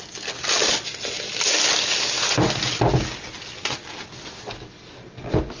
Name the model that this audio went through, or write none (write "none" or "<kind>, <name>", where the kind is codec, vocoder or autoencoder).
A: none